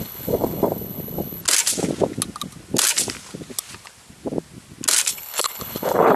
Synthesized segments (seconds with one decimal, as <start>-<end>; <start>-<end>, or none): 0.0-1.4; 5.1-6.2